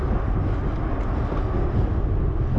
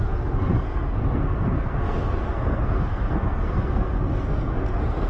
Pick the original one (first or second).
first